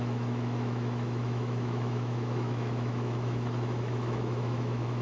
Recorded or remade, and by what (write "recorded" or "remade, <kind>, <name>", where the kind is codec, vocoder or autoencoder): remade, autoencoder, DAC-VAE